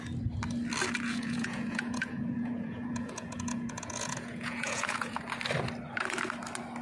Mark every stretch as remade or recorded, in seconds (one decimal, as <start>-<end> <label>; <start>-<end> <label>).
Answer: 0.0-1.1 recorded; 1.1-5.2 remade; 5.2-6.8 recorded